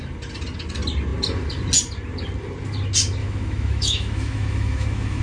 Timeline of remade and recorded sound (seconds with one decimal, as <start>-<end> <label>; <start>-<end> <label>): 0.0-3.2 recorded; 3.2-5.2 remade